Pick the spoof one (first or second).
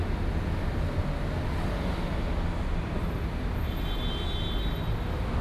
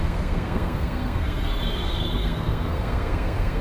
second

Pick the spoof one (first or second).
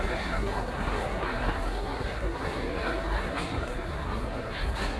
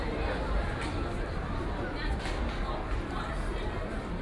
first